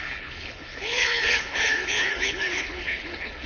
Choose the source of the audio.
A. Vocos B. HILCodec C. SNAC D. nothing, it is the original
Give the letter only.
B